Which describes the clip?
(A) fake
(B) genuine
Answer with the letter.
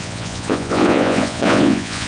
A